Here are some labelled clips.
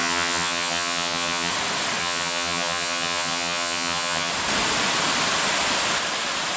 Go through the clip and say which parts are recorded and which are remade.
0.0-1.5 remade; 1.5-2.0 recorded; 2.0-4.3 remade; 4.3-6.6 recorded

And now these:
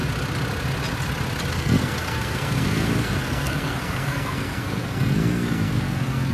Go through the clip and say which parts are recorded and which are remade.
0.0-1.5 recorded; 1.5-6.3 remade